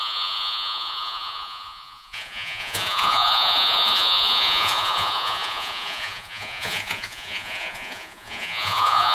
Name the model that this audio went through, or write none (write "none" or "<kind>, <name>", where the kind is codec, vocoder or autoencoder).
vocoder, Vocos